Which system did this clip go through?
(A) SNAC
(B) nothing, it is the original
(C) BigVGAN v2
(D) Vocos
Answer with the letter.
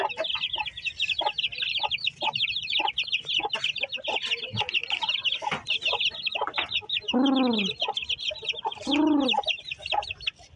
B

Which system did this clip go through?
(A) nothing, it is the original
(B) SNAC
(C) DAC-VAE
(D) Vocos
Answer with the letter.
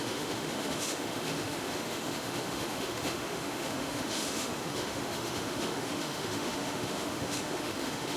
C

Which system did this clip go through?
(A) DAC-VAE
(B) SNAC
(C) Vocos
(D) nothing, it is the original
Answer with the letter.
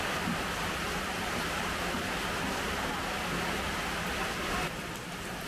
D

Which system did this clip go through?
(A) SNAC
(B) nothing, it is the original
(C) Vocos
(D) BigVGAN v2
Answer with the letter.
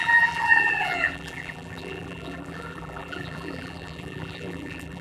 D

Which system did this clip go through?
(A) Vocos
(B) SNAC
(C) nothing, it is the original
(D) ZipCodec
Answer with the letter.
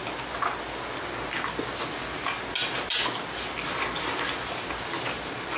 C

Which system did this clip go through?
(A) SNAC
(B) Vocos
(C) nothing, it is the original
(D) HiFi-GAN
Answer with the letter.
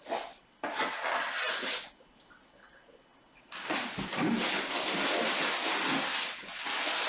C